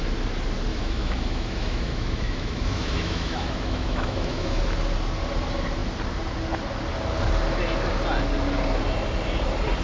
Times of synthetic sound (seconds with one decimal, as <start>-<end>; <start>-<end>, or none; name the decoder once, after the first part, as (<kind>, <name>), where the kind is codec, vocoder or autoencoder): 0.7-4.6 (autoencoder, DAC-VAE)